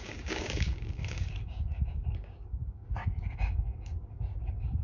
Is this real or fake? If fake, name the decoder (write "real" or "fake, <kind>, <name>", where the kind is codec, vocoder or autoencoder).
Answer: fake, codec, DAC